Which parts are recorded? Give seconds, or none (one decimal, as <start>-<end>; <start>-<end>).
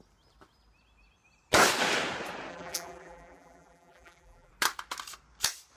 0.0-2.5; 4.5-5.8